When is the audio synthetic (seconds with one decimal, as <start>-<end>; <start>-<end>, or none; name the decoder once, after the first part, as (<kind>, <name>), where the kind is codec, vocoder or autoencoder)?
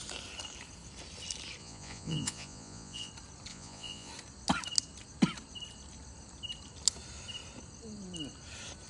1.6-3.1 (vocoder, Vocos); 3.5-4.1